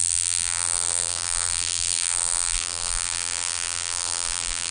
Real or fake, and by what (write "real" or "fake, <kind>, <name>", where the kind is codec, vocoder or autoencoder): fake, vocoder, BigVGAN v2